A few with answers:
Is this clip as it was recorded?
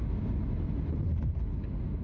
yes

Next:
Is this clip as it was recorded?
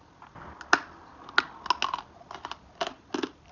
yes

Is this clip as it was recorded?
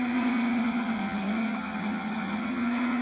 no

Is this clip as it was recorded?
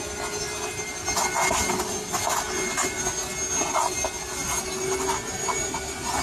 yes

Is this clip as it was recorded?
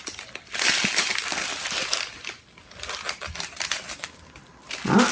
yes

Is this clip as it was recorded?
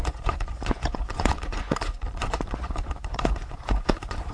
no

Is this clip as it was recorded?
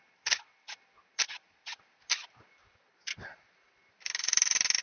yes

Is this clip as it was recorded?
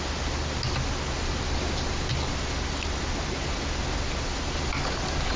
yes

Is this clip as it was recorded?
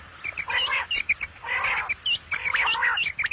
yes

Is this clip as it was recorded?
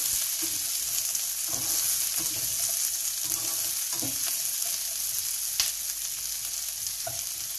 yes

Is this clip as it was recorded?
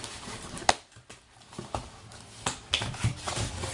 yes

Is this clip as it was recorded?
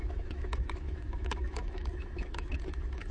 no